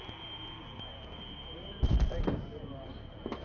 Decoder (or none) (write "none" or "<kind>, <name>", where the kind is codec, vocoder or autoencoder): none